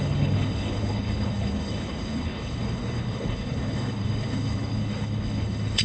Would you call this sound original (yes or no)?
no